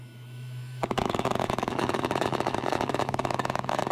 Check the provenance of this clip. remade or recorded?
remade